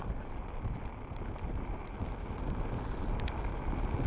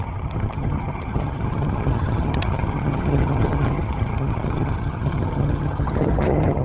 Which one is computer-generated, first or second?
second